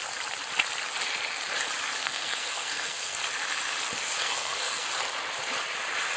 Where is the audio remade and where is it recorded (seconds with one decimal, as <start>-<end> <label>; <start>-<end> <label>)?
0.0-2.0 recorded; 2.0-3.2 remade; 3.2-4.2 recorded; 4.2-4.9 remade; 4.9-6.2 recorded